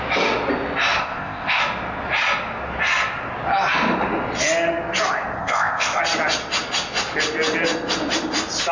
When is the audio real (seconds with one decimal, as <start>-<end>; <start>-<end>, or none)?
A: 0.0-1.0; 1.6-5.4; 6.0-8.7